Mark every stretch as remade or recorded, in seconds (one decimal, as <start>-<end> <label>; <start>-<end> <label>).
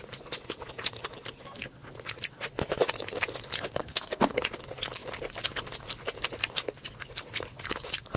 0.0-3.8 recorded; 3.8-4.4 remade; 4.4-8.2 recorded